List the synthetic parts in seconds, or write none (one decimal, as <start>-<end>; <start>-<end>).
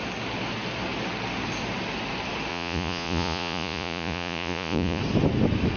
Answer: 2.5-5.0